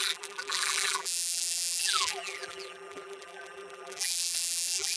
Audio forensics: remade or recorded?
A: remade